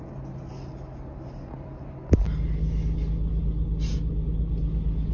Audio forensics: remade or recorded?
recorded